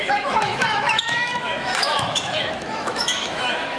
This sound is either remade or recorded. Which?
remade